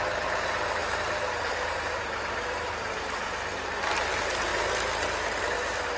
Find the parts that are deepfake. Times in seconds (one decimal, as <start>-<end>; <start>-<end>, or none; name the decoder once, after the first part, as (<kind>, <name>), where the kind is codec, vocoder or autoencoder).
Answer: none